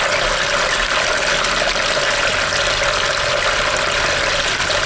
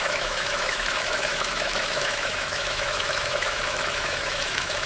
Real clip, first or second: first